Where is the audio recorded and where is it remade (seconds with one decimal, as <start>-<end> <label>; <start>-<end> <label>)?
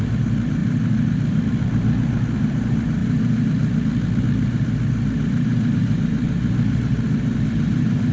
0.0-0.6 remade; 0.6-1.5 recorded; 1.5-3.0 remade; 3.0-4.2 recorded; 4.2-8.1 remade